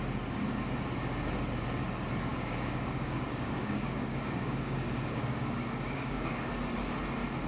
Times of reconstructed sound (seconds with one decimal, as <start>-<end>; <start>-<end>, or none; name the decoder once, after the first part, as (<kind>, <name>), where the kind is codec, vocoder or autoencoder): 2.3-6.5 (codec, DAC)